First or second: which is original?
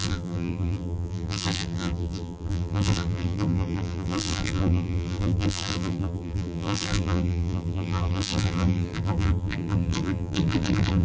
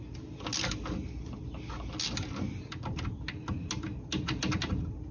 second